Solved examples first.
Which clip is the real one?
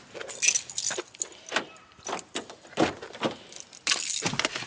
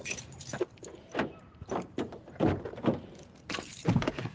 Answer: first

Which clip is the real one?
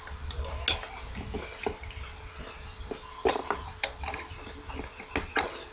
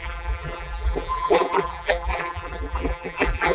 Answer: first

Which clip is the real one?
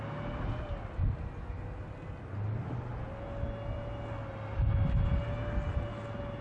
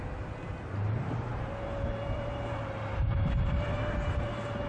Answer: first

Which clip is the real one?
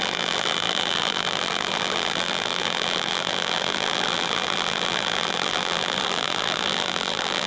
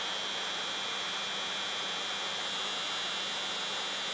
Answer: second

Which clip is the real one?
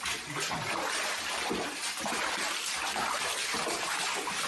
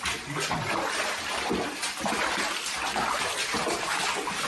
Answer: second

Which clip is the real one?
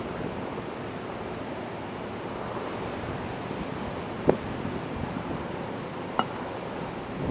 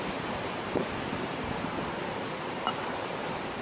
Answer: first